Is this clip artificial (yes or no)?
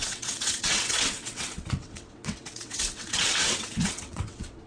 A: yes